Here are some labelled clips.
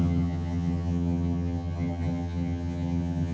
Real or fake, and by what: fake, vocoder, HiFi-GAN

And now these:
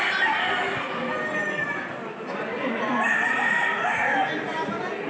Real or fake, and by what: real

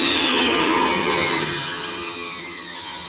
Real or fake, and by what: fake, vocoder, HiFi-GAN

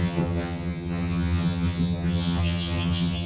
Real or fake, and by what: fake, vocoder, HiFi-GAN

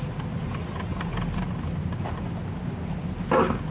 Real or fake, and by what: real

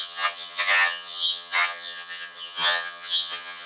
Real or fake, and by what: fake, vocoder, HiFi-GAN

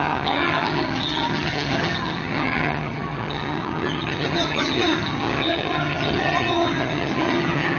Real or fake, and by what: fake, vocoder, HiFi-GAN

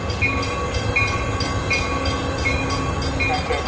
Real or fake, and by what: real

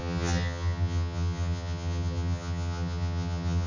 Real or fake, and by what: fake, vocoder, HiFi-GAN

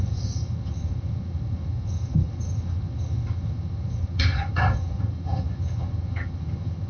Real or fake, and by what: fake, vocoder, HiFi-GAN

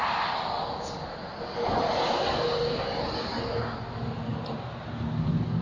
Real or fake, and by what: real